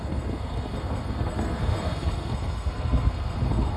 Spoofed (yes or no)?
yes